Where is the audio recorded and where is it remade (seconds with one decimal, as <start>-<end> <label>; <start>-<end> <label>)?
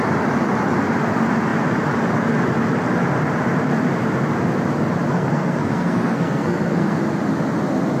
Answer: 0.0-5.1 recorded; 5.1-7.0 remade; 7.0-8.0 recorded